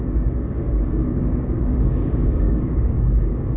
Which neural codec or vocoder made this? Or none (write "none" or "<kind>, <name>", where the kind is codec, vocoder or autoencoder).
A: codec, DAC